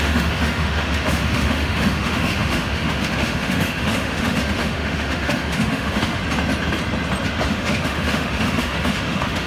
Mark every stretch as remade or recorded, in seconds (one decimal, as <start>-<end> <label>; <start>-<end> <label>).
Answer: 0.0-6.2 remade; 6.2-7.5 recorded; 7.5-9.5 remade